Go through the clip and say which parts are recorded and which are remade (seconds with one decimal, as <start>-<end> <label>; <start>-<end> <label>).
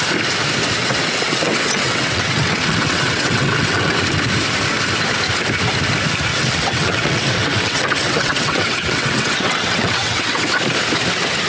0.0-0.8 recorded; 0.8-4.0 remade; 4.0-6.3 recorded; 6.3-10.5 remade; 10.5-11.5 recorded